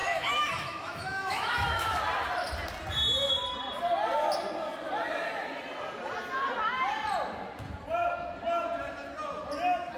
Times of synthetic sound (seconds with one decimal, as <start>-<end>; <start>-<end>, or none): 0.0-2.0